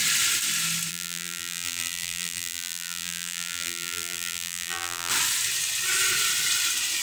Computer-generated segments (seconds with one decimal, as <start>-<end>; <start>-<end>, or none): 0.9-5.1